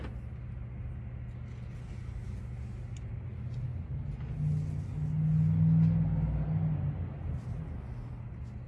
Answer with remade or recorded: recorded